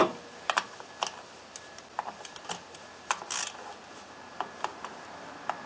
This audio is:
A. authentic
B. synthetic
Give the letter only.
A